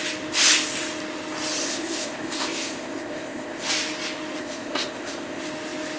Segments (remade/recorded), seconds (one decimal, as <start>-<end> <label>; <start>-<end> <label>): 0.0-1.6 recorded; 1.6-3.7 remade; 3.7-4.4 recorded; 4.4-5.4 remade; 5.4-6.0 recorded